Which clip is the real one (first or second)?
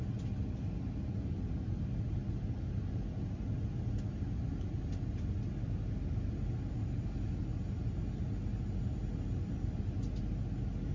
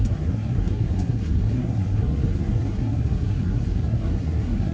first